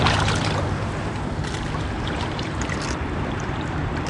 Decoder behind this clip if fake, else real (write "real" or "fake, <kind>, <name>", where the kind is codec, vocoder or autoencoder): fake, vocoder, BigVGAN v2